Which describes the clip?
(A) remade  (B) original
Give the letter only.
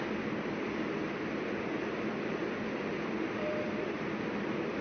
B